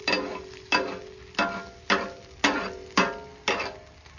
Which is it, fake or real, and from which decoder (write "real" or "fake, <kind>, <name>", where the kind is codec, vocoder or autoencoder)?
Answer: real